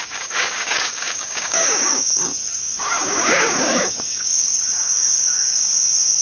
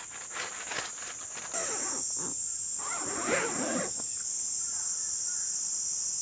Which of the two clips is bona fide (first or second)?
second